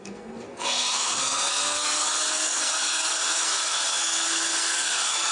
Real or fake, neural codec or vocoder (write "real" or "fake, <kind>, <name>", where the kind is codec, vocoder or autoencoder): fake, codec, SNAC